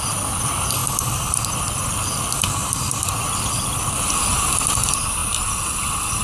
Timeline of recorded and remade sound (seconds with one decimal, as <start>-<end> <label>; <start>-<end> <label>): 0.0-2.6 recorded; 2.6-3.2 remade; 3.2-6.2 recorded